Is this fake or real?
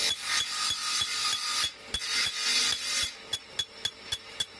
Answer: real